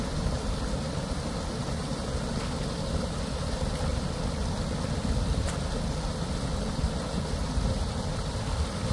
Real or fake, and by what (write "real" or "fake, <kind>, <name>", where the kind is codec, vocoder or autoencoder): real